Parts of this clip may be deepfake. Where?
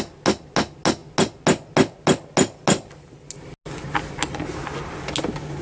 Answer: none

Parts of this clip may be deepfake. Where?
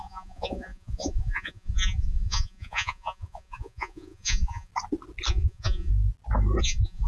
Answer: 0.0-4.7 (vocoder, Vocos); 5.3-5.9; 6.6-7.1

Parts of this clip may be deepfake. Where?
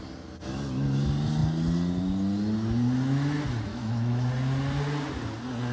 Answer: 3.7-4.3 (autoencoder, DAC-VAE)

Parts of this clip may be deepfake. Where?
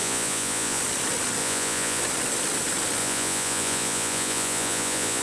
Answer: 0.0-0.8 (vocoder, Vocos); 1.4-2.0; 3.0-5.2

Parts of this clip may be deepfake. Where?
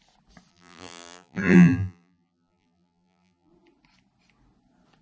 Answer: 0.5-3.5 (vocoder, BigVGAN v2)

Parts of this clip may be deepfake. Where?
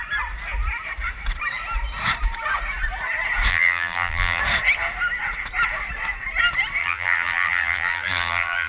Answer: 3.5-4.4 (vocoder, BigVGAN v2); 6.8-8.7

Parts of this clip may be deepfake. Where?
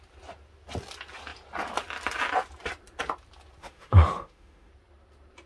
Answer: 3.6-4.7 (autoencoder, DAC-VAE)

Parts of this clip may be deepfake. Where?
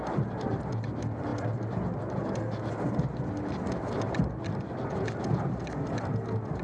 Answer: none